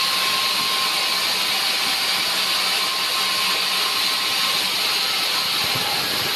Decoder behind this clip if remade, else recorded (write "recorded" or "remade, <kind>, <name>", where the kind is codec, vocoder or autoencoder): recorded